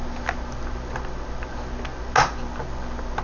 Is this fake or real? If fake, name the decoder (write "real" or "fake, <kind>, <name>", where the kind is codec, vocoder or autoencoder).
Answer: real